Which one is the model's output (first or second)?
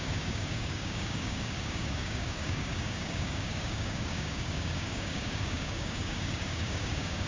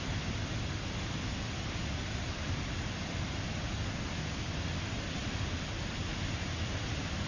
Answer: first